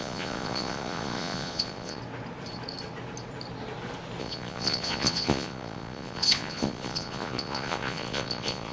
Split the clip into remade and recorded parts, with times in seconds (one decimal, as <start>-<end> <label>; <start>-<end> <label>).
0.0-2.0 remade; 2.0-4.2 recorded; 4.2-8.7 remade